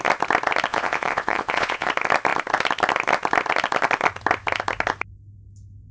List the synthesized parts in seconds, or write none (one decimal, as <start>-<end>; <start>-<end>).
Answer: 0.7-1.9